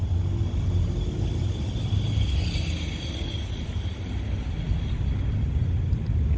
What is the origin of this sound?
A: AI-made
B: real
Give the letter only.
B